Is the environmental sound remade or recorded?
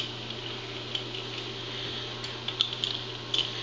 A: recorded